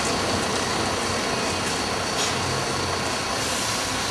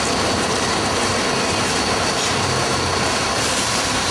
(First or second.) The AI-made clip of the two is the second